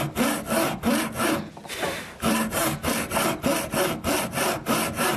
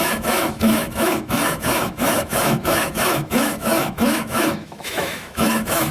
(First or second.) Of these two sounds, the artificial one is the second